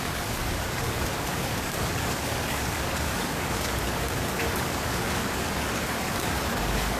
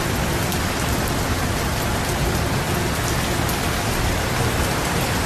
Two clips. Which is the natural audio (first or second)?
second